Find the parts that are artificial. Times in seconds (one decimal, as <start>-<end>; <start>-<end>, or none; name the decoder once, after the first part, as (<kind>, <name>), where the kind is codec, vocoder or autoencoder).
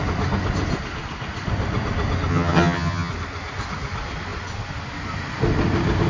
2.3-3.1 (vocoder, HiFi-GAN)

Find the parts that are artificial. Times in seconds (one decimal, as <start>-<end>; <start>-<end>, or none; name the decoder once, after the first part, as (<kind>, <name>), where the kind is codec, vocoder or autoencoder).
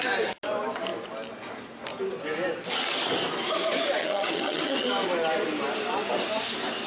4.0-4.9 (vocoder, HiFi-GAN)